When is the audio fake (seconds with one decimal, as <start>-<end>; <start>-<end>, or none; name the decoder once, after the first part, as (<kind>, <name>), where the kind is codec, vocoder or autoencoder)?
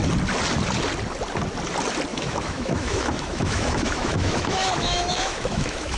2.1-6.0 (autoencoder, DAC-VAE)